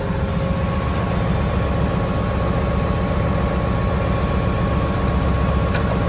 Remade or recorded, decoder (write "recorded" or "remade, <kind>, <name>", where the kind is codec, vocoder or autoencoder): recorded